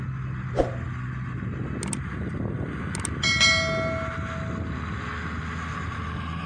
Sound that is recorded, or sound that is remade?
recorded